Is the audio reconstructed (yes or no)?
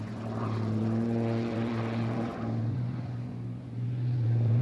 yes